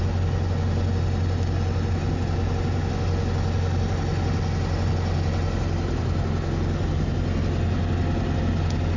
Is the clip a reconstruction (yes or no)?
no